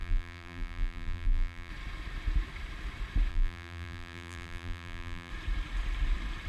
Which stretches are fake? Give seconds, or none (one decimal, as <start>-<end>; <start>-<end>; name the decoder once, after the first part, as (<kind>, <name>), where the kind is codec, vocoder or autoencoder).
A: 0.0-1.7 (vocoder, BigVGAN v2); 3.3-5.3

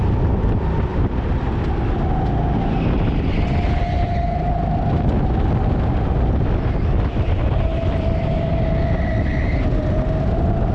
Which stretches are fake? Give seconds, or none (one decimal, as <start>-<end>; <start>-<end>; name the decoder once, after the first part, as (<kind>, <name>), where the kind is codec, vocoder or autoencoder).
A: 7.7-8.5 (vocoder, BigVGAN v2)

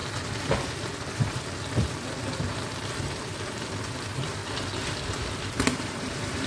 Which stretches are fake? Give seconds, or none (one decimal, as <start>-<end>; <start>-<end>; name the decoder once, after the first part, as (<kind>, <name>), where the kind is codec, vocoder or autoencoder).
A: 3.9-4.4 (vocoder, BigVGAN v2); 5.7-6.5

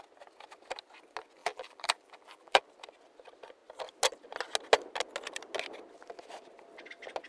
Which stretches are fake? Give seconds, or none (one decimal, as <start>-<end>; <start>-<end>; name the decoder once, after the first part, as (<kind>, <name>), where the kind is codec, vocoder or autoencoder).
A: 1.4-2.6 (vocoder, BigVGAN v2)

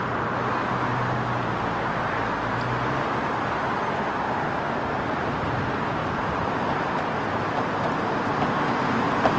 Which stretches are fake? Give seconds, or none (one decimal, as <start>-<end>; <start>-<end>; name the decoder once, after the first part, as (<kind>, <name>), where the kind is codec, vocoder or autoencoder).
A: 6.0-7.0 (vocoder, BigVGAN v2)

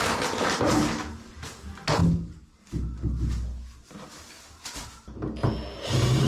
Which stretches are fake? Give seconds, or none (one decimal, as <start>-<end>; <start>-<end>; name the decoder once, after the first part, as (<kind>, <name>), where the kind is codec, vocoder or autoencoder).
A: none